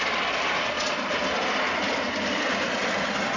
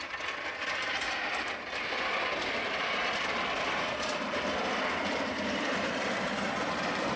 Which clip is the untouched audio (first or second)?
first